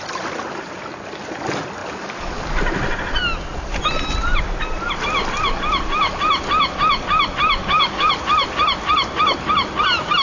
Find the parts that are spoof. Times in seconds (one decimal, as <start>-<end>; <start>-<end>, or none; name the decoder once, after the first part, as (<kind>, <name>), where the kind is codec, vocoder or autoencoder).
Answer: 7.6-8.1 (codec, DAC)